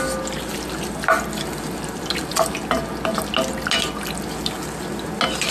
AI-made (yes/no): no